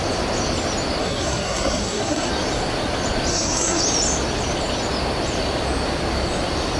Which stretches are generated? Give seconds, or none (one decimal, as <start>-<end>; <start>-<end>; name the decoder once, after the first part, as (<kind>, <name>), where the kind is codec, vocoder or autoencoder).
1.0-2.3 (codec, SNAC); 3.3-3.8